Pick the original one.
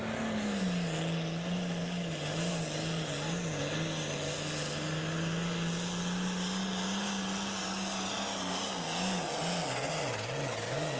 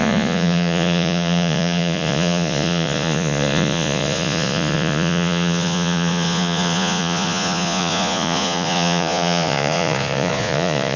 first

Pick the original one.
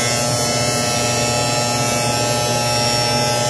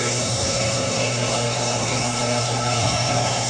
first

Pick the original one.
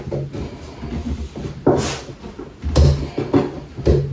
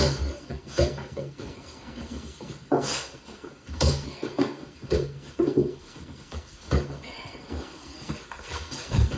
first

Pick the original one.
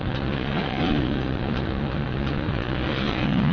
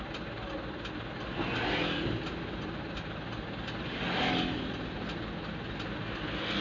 second